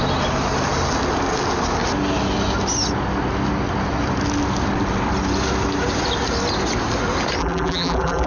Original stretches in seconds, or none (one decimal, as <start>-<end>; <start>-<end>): 0.0-7.4